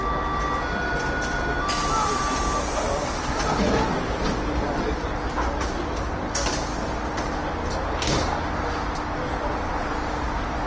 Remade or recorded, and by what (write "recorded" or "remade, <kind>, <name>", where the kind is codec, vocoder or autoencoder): recorded